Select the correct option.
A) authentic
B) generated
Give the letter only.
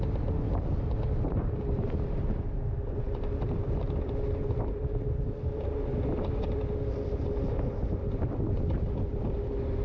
A